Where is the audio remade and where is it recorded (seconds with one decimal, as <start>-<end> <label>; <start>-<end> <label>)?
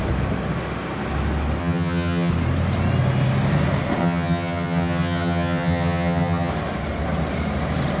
0.0-1.6 recorded; 1.6-2.3 remade; 2.3-4.0 recorded; 4.0-6.5 remade; 6.5-8.0 recorded